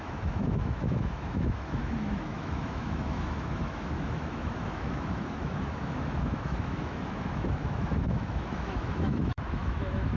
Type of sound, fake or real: fake